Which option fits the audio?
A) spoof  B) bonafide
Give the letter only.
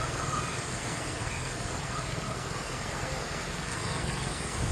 A